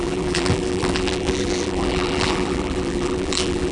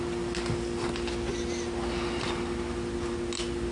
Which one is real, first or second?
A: second